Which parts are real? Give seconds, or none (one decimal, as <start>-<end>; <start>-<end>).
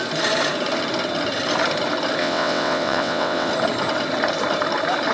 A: 0.0-2.2; 3.5-5.1